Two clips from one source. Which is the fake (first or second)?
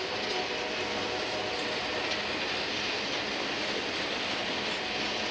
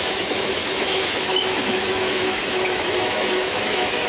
second